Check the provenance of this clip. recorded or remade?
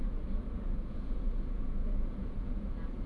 remade